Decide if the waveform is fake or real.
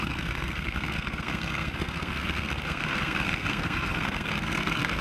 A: fake